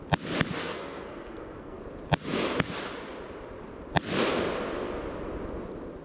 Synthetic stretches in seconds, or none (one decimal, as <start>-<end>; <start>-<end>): 0.6-1.8